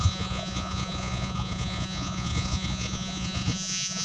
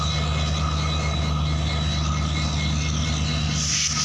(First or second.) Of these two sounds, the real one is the second